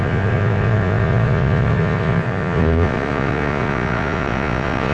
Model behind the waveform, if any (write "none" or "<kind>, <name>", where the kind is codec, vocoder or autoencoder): vocoder, Vocos